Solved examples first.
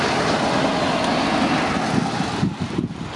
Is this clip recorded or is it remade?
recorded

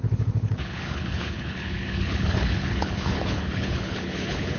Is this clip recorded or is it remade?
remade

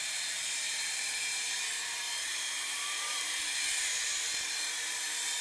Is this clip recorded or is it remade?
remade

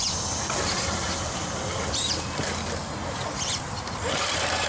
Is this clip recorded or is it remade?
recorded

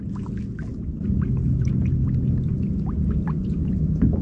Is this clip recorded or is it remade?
recorded